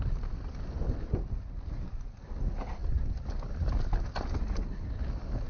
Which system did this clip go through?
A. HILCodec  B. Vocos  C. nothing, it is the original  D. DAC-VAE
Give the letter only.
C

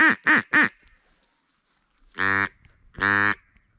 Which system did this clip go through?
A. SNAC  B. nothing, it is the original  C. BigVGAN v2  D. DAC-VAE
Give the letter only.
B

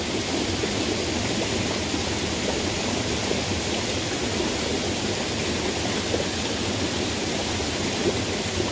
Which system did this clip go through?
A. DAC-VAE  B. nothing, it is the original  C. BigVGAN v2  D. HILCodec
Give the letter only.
B